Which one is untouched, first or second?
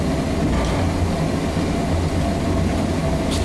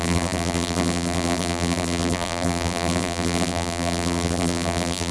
first